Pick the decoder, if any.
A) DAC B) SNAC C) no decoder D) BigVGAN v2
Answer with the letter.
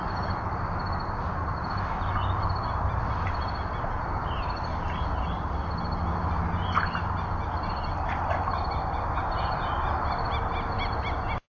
C